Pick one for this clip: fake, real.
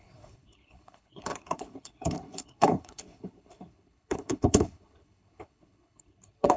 fake